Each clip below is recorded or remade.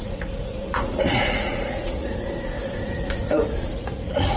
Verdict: remade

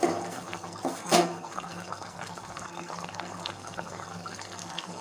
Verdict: remade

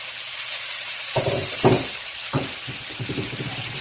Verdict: remade